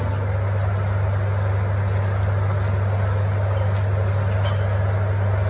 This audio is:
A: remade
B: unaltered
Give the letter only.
B